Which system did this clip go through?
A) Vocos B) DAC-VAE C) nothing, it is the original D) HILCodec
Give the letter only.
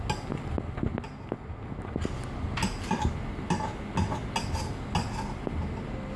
C